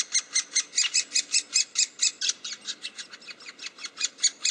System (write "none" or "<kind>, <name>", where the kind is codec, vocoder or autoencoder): none